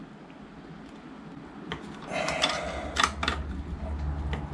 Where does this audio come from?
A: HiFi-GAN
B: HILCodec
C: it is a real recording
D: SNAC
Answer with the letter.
C